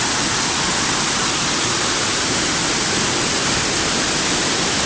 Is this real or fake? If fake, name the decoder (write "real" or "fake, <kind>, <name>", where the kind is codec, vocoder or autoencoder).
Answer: real